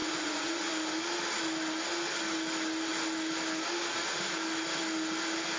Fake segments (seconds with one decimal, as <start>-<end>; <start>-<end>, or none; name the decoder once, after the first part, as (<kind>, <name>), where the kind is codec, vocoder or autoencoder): 0.0-0.7 (vocoder, Vocos)